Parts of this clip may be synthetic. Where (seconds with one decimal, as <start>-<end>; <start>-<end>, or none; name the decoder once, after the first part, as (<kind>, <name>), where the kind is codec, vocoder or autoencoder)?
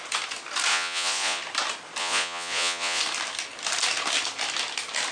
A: 0.7-1.4 (vocoder, Vocos); 2.0-3.0